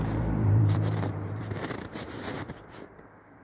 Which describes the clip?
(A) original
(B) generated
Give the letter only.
B